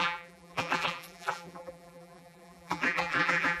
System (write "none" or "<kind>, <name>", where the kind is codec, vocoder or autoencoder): vocoder, BigVGAN v2